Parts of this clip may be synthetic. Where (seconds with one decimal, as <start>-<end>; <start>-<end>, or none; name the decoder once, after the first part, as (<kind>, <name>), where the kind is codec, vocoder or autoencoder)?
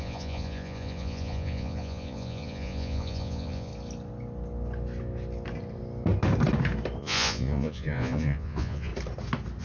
0.0-3.7 (vocoder, Vocos); 7.0-8.9